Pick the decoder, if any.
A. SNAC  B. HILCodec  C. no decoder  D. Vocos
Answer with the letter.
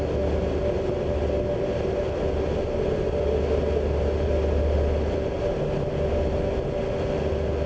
C